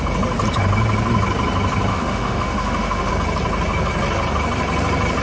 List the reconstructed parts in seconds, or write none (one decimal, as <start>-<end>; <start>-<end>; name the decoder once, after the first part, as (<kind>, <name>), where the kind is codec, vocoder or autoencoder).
1.9-3.1 (autoencoder, DAC-VAE)